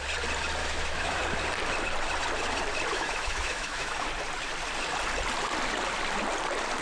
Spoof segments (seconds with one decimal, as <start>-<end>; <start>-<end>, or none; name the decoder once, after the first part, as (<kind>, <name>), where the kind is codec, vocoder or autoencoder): 0.6-1.2 (autoencoder, DAC-VAE); 2.9-4.1